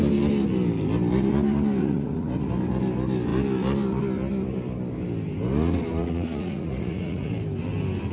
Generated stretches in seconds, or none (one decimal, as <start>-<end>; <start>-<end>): 1.8-2.5; 6.0-7.3